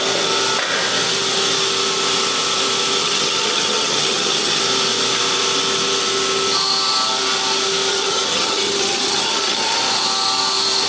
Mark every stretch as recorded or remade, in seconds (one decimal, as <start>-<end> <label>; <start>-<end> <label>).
0.0-3.0 recorded; 3.0-4.6 remade; 4.6-7.9 recorded; 7.9-9.8 remade; 9.8-10.9 recorded